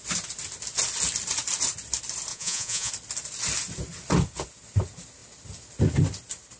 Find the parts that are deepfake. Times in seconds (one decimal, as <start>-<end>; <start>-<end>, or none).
2.3-2.9

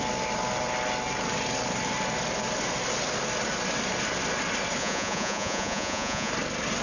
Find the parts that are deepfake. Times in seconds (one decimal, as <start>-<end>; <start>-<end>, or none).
4.8-6.3